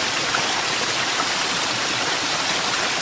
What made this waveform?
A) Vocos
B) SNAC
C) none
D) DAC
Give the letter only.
C